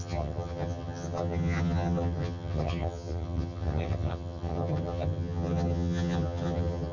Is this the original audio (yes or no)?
no